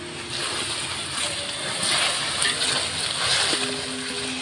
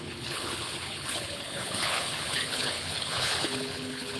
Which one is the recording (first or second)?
first